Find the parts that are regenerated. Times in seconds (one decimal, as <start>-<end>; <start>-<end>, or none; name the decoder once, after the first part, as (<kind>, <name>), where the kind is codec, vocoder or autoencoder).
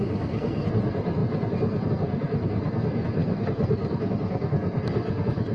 0.0-5.5 (codec, SNAC)